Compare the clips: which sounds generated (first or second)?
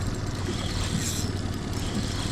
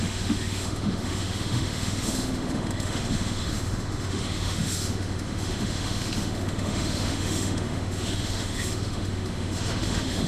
second